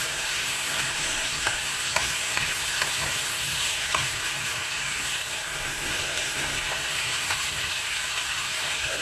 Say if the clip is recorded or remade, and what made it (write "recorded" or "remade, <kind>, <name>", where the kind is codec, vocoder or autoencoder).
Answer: remade, codec, SNAC